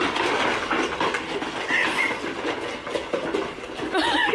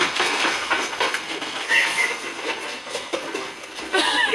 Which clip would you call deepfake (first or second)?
second